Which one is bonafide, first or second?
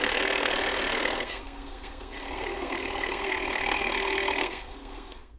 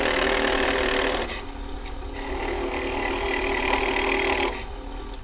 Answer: second